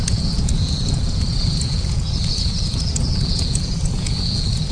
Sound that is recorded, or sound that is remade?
remade